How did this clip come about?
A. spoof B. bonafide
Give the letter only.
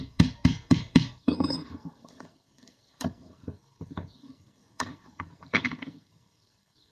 A